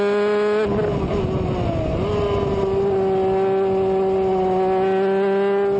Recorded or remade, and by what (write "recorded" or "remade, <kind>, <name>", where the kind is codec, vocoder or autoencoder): recorded